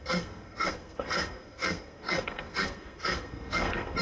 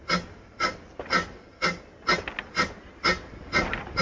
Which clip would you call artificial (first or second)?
first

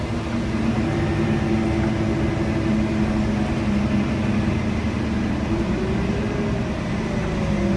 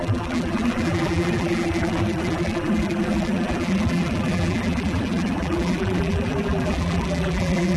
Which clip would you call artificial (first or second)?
second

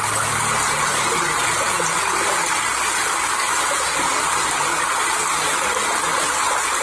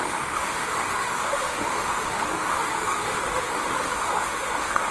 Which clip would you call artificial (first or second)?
second